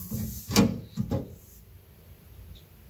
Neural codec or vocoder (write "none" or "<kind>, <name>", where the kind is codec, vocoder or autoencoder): none